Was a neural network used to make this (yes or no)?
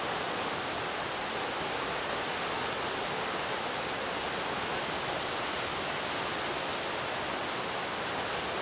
no